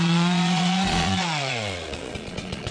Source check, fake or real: fake